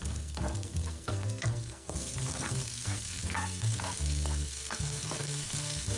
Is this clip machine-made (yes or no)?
yes